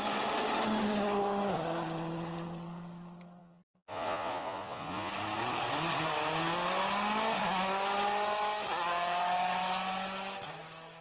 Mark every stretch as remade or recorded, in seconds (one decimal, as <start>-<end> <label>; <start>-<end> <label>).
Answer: 0.0-3.4 recorded; 3.4-5.1 remade; 5.1-11.0 recorded